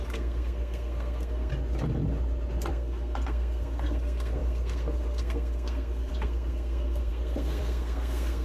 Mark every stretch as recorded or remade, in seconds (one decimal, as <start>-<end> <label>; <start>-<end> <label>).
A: 0.0-1.5 remade; 1.5-2.7 recorded; 2.7-8.4 remade